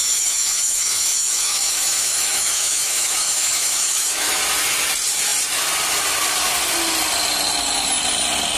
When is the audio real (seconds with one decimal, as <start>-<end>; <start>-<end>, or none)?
4.4-8.6